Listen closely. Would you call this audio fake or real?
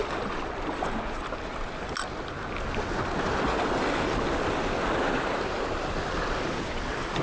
real